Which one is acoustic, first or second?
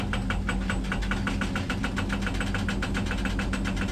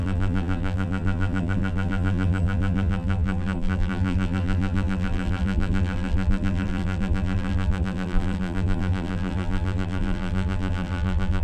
first